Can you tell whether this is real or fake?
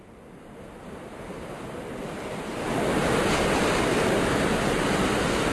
real